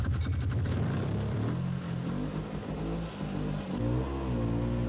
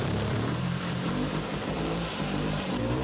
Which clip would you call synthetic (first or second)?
second